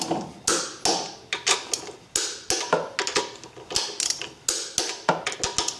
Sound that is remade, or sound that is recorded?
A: recorded